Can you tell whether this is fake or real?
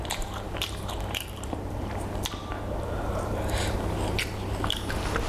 fake